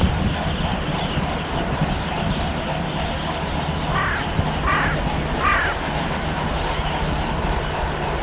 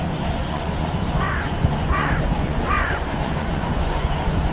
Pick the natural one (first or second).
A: first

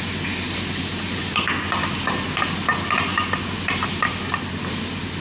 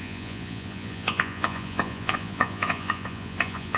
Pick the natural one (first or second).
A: first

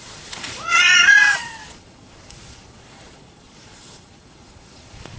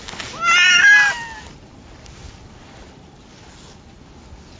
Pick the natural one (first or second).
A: second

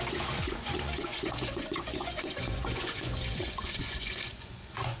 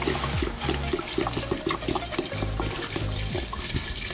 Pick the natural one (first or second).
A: second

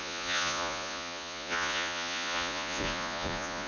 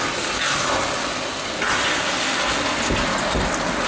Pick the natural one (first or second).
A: second